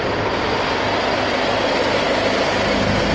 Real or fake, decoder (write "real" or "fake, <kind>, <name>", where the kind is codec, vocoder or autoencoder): real